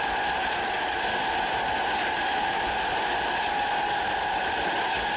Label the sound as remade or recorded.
recorded